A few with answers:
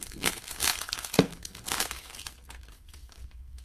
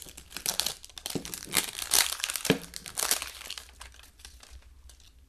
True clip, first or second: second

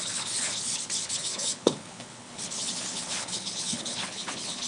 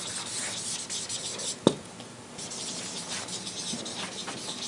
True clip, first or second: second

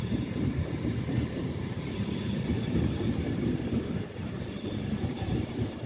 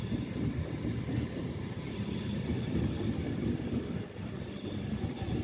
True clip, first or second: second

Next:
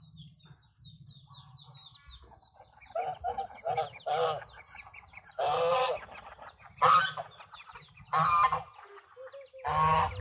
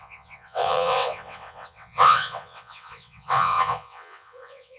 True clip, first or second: first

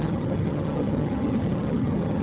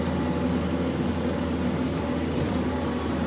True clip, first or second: second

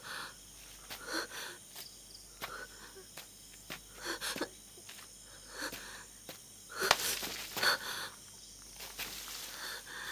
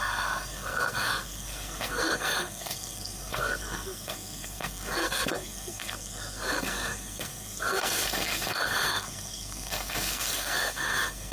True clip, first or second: first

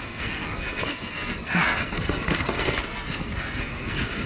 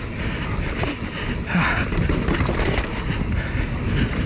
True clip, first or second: second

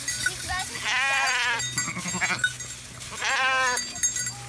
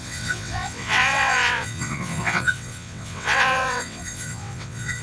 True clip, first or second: first